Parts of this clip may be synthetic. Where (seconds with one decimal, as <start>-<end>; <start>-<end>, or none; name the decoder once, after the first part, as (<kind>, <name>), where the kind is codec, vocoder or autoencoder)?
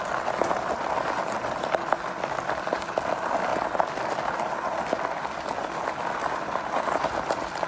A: none